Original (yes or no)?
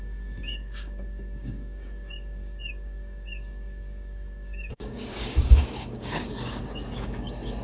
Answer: no